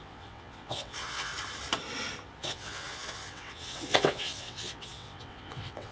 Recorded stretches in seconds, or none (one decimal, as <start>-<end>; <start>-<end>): 1.3-2.4